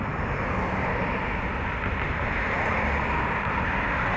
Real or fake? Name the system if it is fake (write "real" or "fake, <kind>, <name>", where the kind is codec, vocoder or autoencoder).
real